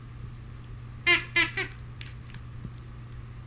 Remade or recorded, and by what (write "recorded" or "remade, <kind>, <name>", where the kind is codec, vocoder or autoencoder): recorded